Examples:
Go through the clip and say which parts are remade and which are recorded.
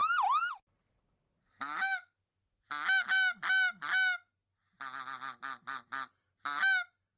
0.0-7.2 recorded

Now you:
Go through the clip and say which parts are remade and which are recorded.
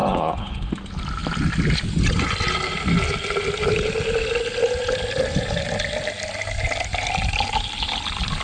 0.0-0.7 remade; 0.7-8.4 recorded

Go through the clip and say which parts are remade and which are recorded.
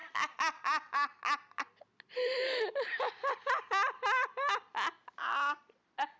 0.0-6.2 recorded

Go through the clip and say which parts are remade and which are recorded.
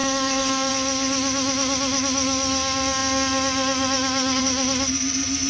0.0-0.7 remade; 0.7-5.5 recorded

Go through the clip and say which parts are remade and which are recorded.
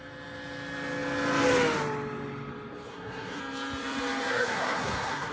0.0-2.9 recorded; 2.9-3.4 remade; 3.4-4.3 recorded; 4.3-5.3 remade